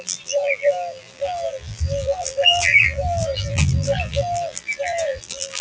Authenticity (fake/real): fake